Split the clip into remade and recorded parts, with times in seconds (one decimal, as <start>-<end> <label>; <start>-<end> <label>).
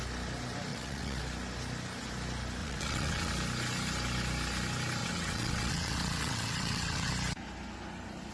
0.0-0.7 recorded; 0.7-1.2 remade; 1.2-2.6 recorded; 2.6-3.3 remade; 3.3-5.0 recorded; 5.0-7.1 remade; 7.1-8.3 recorded